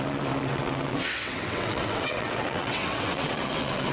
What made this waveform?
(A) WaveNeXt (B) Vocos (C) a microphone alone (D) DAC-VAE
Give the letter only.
A